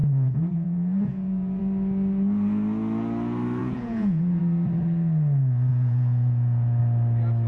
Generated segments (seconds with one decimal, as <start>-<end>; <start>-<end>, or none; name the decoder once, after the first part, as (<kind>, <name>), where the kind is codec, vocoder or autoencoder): 0.0-1.6 (vocoder, Vocos); 3.6-4.4; 5.7-6.8